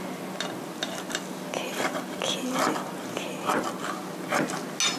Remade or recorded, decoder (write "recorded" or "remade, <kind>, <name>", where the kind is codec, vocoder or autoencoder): recorded